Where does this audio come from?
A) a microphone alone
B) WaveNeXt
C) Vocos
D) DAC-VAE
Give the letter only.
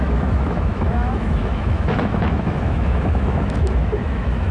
D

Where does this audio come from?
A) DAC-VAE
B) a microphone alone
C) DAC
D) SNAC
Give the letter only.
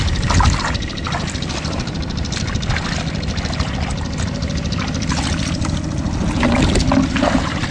B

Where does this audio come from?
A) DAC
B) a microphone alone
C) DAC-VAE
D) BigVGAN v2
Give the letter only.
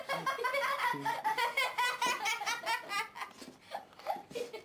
B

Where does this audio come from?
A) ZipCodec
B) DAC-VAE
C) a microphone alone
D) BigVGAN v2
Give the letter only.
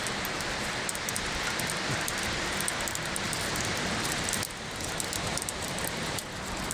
C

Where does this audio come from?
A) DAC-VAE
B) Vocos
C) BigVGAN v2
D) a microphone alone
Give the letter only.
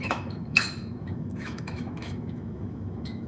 A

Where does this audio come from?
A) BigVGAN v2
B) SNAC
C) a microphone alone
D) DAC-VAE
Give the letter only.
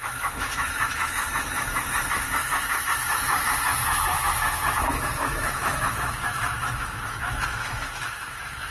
D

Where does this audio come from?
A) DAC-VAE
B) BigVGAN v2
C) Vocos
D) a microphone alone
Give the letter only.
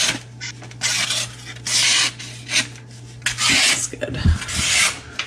D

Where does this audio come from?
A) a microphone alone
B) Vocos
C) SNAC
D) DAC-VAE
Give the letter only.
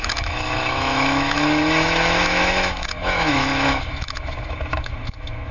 D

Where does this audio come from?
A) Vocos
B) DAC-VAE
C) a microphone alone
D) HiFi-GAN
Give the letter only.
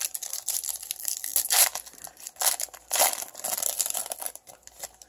C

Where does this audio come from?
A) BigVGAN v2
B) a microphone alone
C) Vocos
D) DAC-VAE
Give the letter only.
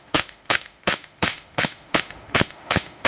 D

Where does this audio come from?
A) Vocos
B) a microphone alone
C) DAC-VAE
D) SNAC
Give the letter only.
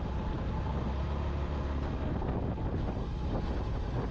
B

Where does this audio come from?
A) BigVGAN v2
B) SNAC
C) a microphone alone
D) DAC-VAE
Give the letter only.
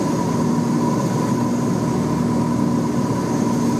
C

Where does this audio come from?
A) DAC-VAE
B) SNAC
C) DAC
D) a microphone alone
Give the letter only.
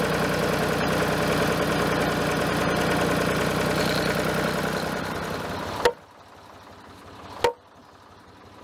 D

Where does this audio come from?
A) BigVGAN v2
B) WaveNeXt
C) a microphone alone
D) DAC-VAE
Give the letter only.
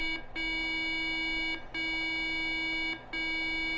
C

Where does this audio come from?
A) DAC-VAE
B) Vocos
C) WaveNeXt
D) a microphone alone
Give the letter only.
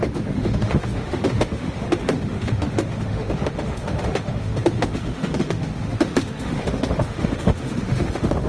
A